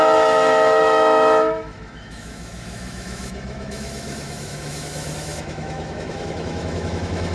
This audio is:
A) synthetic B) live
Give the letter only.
A